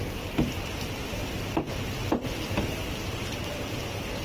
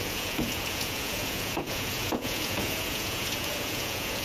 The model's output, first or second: second